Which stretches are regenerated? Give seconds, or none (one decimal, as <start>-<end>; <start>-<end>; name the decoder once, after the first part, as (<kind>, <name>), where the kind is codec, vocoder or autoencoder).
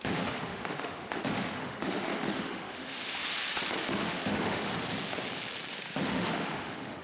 0.0-3.2 (autoencoder, DAC-VAE); 4.0-4.7; 5.7-7.0